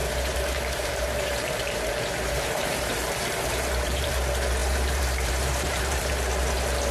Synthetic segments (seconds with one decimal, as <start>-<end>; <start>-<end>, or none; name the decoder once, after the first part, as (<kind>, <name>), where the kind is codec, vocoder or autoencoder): 0.0-4.1 (vocoder, BigVGAN v2); 4.6-6.1